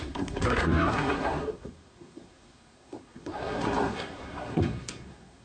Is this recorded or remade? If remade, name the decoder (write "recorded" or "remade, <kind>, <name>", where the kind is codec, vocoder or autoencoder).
remade, codec, SNAC